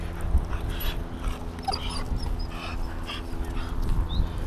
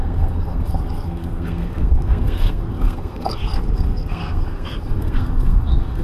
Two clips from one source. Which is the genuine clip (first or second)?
first